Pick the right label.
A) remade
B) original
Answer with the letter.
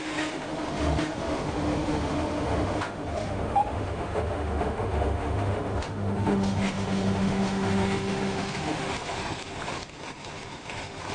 A